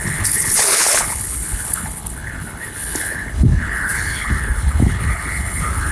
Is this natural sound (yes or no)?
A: no